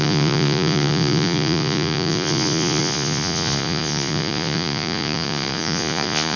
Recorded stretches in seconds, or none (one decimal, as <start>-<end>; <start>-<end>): none